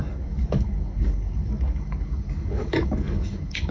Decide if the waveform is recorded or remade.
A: remade